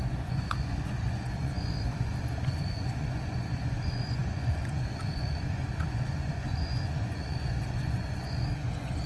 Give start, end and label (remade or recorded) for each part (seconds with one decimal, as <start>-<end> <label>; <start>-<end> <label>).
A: 0.0-9.1 remade